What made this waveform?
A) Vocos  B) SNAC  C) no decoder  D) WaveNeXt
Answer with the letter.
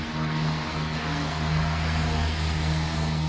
B